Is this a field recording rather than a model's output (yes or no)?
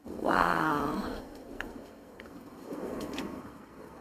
no